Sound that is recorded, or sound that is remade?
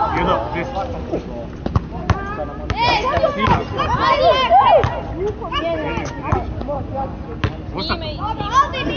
recorded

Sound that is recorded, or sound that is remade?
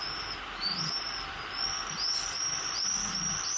recorded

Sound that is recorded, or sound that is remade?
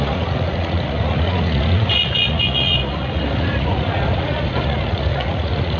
remade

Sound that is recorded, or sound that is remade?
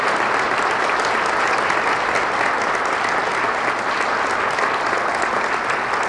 recorded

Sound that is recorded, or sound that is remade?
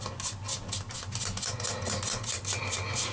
recorded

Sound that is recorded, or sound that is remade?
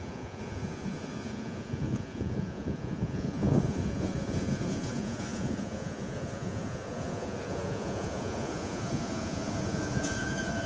remade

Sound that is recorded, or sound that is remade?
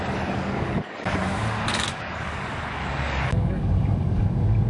remade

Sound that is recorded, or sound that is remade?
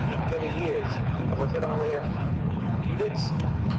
remade